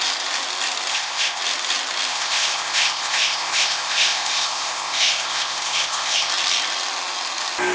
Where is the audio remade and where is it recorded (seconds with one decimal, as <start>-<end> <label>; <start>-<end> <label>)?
0.0-0.9 recorded; 0.9-1.4 remade; 1.4-2.1 recorded; 2.1-6.3 remade; 6.3-7.7 recorded